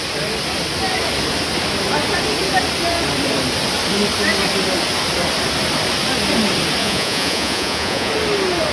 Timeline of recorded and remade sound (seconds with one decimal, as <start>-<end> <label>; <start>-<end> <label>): 0.0-6.8 recorded; 6.8-8.1 remade; 8.1-8.7 recorded